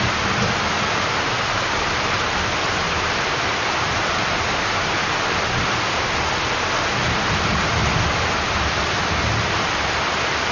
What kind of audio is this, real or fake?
real